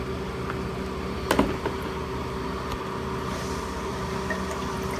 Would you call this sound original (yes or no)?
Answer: yes